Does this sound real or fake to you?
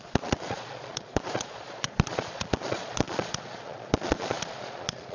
fake